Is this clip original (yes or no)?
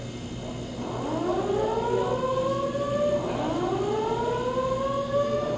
yes